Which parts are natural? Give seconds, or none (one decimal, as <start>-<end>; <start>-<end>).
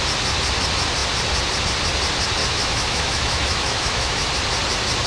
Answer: 0.0-2.4; 4.3-5.1